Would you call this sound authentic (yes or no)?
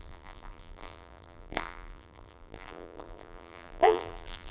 no